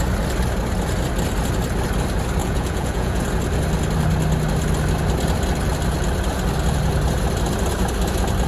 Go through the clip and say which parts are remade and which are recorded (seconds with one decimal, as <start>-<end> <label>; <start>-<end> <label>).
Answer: 0.0-2.4 recorded; 2.4-3.2 remade; 3.2-8.5 recorded